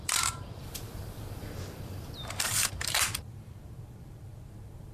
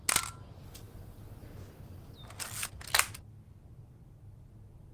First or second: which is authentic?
second